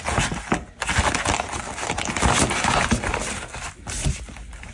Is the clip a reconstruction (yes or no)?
no